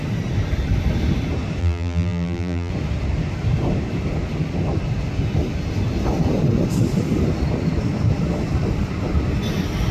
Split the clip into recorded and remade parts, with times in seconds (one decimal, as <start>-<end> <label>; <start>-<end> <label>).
0.0-1.6 recorded; 1.6-2.7 remade; 2.7-9.9 recorded